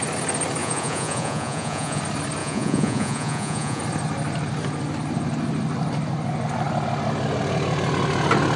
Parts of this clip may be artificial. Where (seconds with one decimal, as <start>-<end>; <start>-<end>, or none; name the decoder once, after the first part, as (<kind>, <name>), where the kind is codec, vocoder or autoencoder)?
0.6-2.0 (vocoder, Vocos); 2.4-3.8